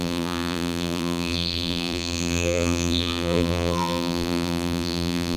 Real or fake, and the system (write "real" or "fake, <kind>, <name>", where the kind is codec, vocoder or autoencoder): fake, vocoder, BigVGAN v2